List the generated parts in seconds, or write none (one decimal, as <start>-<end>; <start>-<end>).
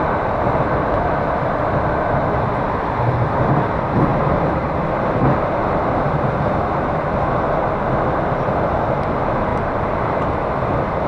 4.1-6.6; 9.5-10.4